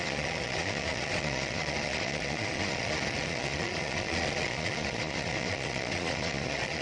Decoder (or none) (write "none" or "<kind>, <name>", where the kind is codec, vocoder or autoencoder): vocoder, Vocos